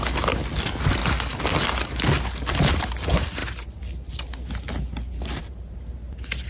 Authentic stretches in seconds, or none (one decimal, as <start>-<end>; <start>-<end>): 0.0-6.5